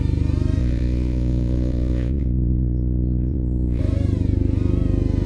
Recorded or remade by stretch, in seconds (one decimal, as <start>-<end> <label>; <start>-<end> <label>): 0.0-0.6 recorded; 0.6-3.8 remade; 3.8-5.3 recorded